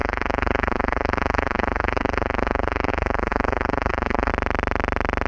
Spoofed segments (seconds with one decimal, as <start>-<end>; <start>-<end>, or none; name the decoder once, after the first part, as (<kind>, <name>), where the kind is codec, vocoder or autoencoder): 0.0-4.3 (codec, SNAC)